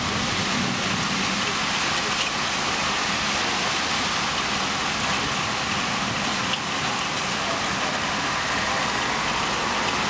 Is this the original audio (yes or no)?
yes